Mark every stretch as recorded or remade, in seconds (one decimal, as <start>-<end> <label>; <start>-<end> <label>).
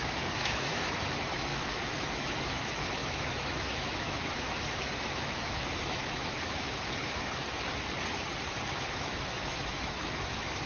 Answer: 0.0-7.4 remade; 7.4-8.7 recorded; 8.7-10.7 remade